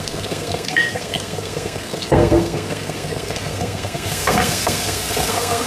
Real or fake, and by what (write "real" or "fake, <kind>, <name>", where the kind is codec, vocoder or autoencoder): fake, codec, SNAC